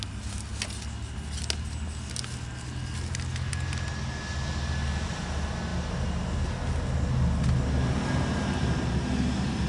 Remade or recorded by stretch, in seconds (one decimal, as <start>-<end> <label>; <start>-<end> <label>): 0.0-9.7 recorded